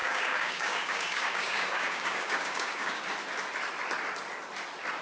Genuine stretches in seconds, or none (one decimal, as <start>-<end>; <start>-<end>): 3.0-5.0